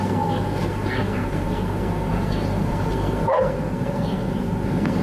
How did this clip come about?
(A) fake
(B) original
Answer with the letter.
A